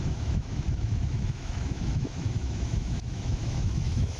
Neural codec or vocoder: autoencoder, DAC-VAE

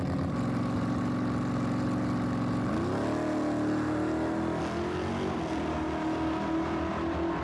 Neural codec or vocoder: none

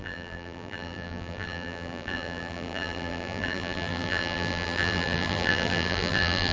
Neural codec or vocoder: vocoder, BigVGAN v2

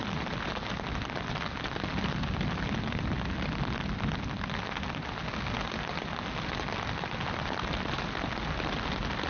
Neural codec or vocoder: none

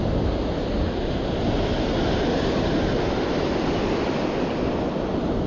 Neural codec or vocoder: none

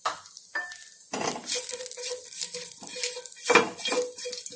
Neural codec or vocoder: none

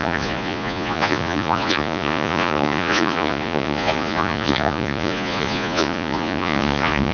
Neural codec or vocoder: vocoder, Vocos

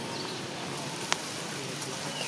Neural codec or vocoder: none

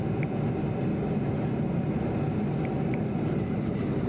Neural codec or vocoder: none